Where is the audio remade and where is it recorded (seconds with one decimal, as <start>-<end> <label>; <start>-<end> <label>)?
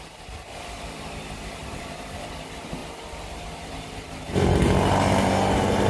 0.0-1.6 recorded; 1.6-2.3 remade; 2.3-2.8 recorded; 2.8-3.7 remade; 3.7-5.9 recorded